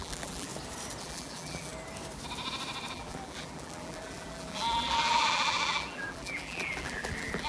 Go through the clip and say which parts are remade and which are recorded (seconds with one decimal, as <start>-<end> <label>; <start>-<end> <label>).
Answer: 0.0-0.5 remade; 0.5-1.0 recorded; 1.0-1.7 remade; 1.7-2.9 recorded; 2.9-7.5 remade